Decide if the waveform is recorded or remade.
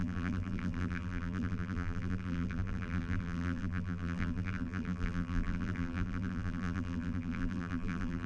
remade